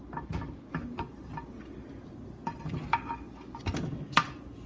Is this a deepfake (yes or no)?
no